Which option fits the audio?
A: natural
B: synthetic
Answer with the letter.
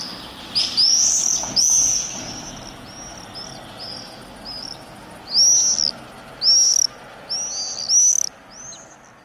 A